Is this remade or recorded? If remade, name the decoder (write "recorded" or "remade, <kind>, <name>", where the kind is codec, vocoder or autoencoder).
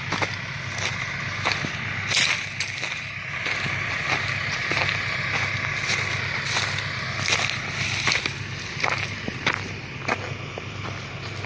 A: recorded